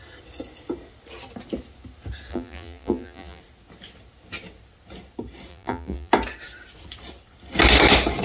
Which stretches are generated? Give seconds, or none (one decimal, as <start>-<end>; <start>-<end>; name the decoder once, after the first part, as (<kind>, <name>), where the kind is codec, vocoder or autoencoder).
2.3-3.4 (vocoder, BigVGAN v2); 5.5-6.1